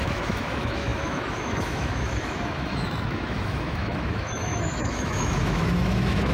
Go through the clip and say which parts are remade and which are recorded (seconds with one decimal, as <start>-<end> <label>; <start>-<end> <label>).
0.0-6.3 remade